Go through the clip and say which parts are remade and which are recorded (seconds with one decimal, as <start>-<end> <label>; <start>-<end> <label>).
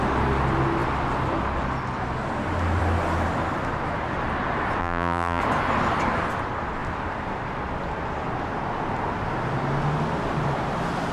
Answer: 0.0-4.8 recorded; 4.8-5.4 remade; 5.4-11.1 recorded